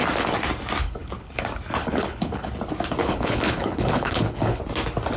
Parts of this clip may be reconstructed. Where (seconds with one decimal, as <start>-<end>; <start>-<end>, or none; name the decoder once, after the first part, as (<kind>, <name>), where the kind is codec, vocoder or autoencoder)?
0.8-1.4 (codec, HILCodec); 1.8-2.5; 3.0-4.6